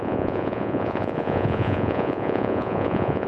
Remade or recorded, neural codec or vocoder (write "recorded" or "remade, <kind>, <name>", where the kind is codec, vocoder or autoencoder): remade, vocoder, Vocos